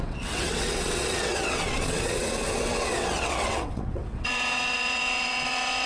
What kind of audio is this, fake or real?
fake